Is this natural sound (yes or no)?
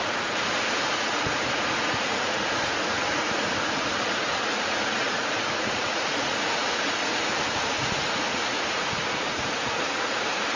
no